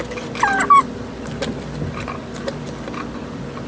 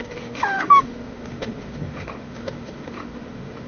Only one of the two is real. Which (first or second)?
first